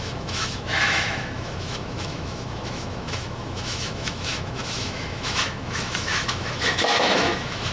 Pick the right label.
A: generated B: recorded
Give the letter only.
A